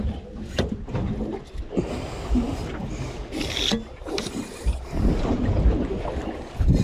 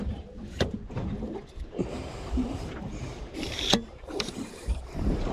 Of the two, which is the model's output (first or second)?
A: second